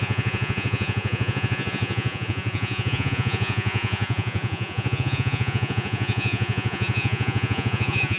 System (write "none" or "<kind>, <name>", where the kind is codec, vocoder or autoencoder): vocoder, Vocos